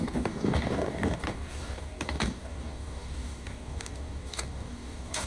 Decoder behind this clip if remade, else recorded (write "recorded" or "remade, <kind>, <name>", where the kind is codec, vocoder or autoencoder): remade, codec, DAC